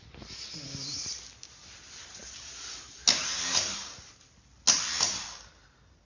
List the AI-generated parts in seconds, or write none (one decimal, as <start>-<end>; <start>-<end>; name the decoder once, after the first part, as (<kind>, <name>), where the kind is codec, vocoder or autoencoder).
none